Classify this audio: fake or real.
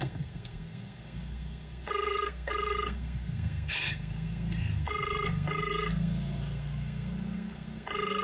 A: fake